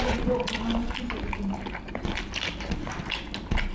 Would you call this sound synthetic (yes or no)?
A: no